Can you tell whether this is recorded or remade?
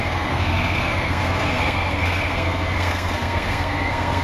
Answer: remade